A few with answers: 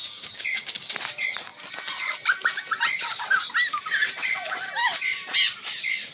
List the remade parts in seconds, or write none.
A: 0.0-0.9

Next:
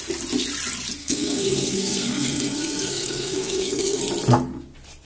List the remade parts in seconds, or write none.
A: 1.0-4.0

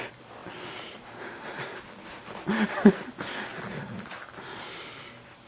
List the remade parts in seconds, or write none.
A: 0.4-1.0

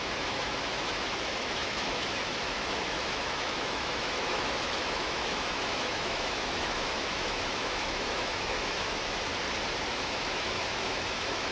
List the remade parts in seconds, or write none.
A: 0.0-9.3; 9.9-11.5

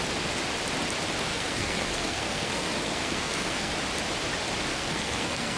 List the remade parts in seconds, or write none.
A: 1.3-3.7; 4.7-5.6

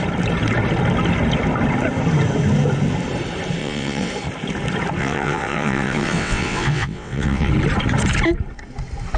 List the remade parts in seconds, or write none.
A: 3.6-4.1; 5.0-7.5

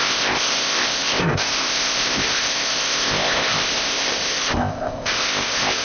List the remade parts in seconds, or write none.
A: 0.0-5.8

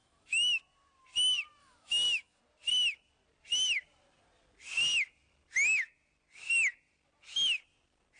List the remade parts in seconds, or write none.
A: 0.0-0.6; 1.6-2.4